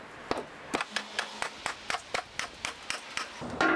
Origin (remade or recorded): recorded